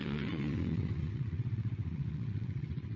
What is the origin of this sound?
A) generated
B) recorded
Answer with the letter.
A